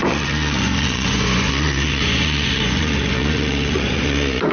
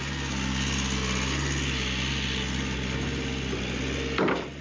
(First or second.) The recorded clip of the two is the second